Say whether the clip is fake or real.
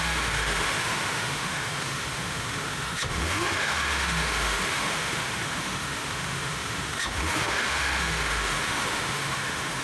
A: fake